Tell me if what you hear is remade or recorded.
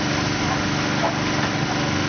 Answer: recorded